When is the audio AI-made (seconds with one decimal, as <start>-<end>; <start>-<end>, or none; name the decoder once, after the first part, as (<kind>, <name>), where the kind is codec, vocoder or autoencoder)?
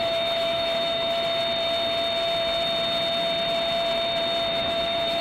0.0-1.4 (autoencoder, DAC-VAE); 4.5-5.2